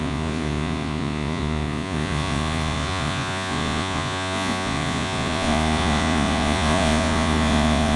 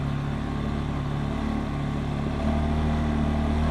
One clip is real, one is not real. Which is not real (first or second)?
first